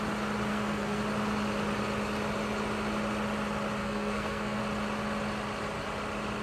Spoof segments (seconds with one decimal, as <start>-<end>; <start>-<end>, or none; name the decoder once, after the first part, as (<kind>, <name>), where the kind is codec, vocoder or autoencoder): 0.5-1.0 (codec, SNAC); 3.8-4.6